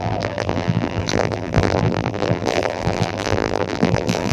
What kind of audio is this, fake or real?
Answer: fake